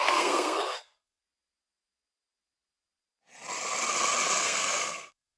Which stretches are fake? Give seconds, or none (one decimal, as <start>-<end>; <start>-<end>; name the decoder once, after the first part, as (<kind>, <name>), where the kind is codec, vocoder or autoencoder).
0.0-1.2 (codec, SNAC); 4.4-5.4